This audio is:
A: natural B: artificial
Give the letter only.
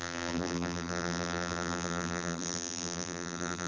B